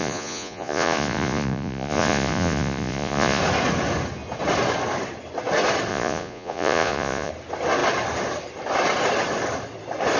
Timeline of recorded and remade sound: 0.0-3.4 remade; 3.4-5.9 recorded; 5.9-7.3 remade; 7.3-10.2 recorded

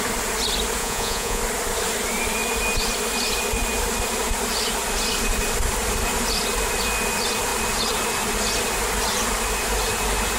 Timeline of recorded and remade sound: 0.0-0.8 recorded; 0.8-1.4 remade; 1.4-10.4 recorded

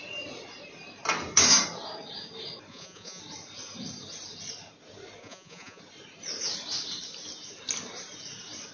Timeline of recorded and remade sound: 0.0-2.7 recorded; 2.7-3.2 remade; 3.2-5.2 recorded; 5.2-5.8 remade; 5.8-8.7 recorded